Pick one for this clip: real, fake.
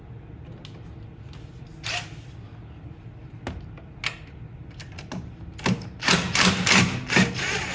real